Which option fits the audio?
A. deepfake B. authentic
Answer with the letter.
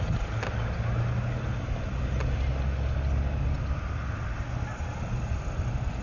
B